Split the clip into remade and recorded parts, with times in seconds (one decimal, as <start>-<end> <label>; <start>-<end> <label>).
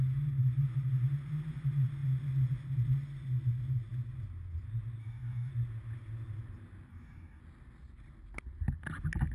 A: 0.0-5.0 recorded; 5.0-5.5 remade; 5.5-6.9 recorded; 6.9-7.4 remade; 7.4-9.3 recorded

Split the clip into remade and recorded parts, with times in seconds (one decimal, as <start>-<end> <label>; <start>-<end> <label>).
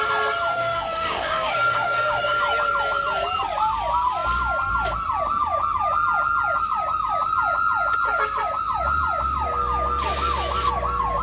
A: 0.0-0.5 recorded; 0.5-2.4 remade; 2.4-11.2 recorded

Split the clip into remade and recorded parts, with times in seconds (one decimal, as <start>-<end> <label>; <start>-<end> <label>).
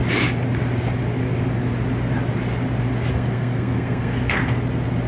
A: 0.0-3.1 recorded; 3.1-4.4 remade; 4.4-5.1 recorded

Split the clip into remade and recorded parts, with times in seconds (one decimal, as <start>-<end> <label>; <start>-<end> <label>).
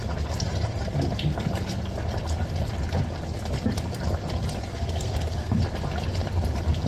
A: 0.0-4.7 recorded; 4.7-5.6 remade; 5.6-6.9 recorded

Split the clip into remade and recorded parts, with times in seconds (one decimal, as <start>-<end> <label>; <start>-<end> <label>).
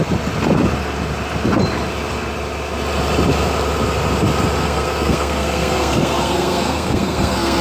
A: 0.0-4.6 recorded; 4.6-7.6 remade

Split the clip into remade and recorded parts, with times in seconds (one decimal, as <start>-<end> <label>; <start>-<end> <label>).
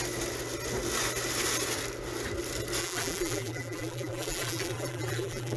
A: 0.0-2.8 recorded; 2.8-5.6 remade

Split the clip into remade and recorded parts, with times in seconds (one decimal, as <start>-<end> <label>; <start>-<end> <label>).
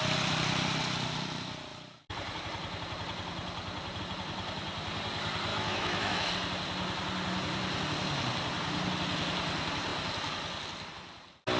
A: 0.0-5.5 recorded; 5.5-6.3 remade; 6.3-11.6 recorded